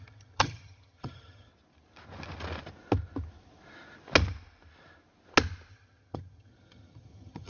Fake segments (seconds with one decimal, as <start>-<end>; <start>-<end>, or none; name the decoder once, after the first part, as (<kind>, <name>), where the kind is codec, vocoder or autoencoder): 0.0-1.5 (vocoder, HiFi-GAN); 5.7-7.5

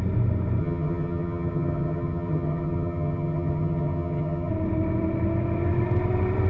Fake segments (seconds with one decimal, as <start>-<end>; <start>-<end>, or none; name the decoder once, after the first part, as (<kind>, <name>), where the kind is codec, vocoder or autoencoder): 0.6-4.5 (vocoder, HiFi-GAN)

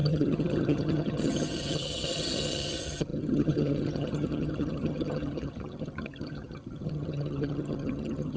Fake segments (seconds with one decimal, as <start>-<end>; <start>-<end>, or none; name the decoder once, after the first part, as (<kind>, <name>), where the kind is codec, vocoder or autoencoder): 0.0-8.4 (vocoder, HiFi-GAN)